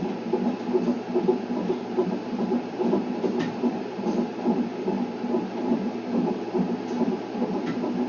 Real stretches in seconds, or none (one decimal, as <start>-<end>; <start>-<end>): 0.0-2.0; 6.3-8.1